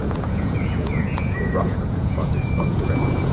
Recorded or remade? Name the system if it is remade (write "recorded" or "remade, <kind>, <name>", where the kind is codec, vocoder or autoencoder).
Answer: remade, vocoder, Vocos